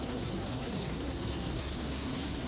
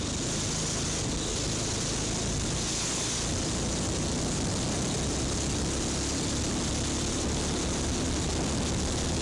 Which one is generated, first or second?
first